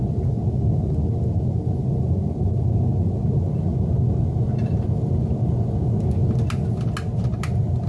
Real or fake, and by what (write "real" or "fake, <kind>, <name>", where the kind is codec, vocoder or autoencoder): real